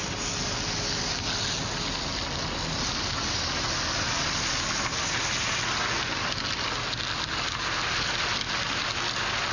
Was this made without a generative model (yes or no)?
yes